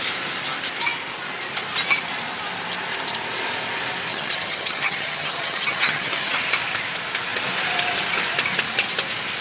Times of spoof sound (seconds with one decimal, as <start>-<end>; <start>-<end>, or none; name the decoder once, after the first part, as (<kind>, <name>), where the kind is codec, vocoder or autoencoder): 4.1-6.4 (vocoder, HiFi-GAN)